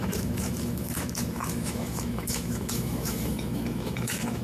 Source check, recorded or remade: remade